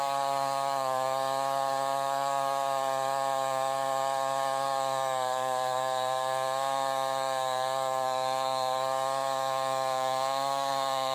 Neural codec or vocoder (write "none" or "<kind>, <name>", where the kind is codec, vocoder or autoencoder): codec, DAC